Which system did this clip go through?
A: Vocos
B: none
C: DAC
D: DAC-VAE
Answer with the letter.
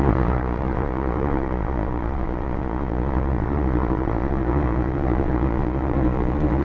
A